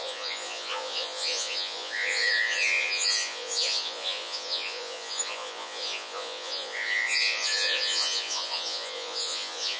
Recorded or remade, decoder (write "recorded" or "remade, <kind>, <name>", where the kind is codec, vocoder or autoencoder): remade, vocoder, Vocos